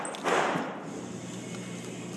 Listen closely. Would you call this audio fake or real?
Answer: real